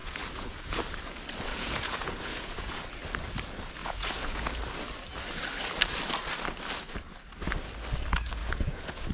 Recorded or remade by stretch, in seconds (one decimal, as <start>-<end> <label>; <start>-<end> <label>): 0.0-0.8 remade; 0.8-1.5 recorded; 1.5-2.8 remade; 2.8-3.8 recorded; 3.8-4.5 remade; 4.5-8.4 recorded; 8.4-9.1 remade